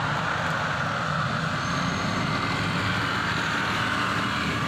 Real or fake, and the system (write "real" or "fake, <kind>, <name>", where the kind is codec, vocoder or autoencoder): real